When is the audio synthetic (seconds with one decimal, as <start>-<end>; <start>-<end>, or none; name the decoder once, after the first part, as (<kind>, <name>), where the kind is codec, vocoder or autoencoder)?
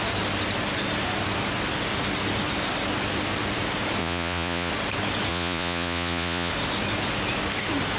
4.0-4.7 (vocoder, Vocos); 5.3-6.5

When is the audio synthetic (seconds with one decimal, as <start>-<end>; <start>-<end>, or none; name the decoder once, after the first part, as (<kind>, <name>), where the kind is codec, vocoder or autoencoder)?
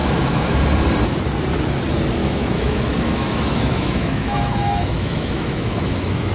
0.0-0.6 (autoencoder, DAC-VAE); 2.2-6.3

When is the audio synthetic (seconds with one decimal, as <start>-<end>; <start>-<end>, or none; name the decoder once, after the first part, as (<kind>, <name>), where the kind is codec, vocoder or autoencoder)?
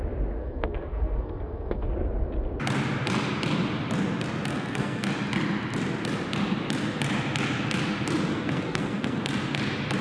0.4-1.9 (codec, SNAC); 4.5-5.1; 8.3-9.2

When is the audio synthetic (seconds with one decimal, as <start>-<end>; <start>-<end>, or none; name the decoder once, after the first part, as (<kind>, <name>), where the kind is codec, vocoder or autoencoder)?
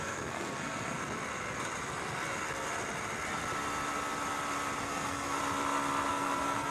0.0-1.0 (codec, SNAC); 4.8-5.4; 6.1-6.7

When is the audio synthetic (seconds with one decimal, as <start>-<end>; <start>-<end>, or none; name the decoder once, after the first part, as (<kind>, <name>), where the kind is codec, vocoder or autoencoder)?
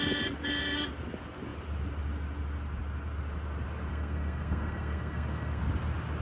3.9-5.6 (codec, SNAC)